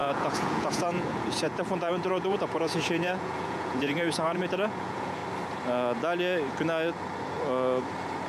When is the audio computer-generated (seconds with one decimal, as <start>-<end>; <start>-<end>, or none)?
0.0-5.2